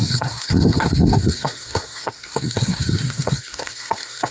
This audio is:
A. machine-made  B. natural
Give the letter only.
A